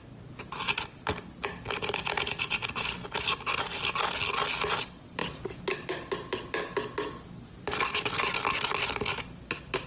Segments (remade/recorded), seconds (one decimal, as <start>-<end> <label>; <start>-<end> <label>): 0.0-9.9 recorded